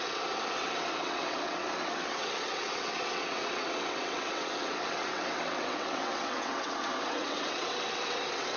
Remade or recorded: remade